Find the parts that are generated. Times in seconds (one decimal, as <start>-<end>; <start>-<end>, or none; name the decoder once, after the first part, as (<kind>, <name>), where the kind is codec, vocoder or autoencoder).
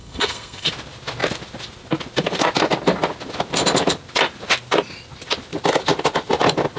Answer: 0.0-0.7 (codec, SNAC)